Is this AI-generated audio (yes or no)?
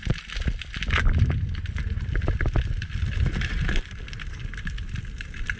no